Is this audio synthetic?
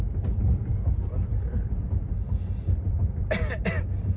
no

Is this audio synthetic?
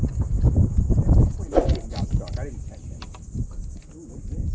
no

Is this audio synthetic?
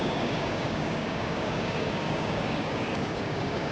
yes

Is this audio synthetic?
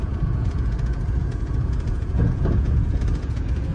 yes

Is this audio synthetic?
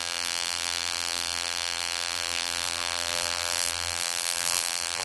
yes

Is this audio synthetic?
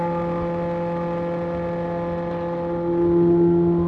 no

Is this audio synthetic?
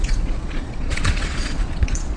yes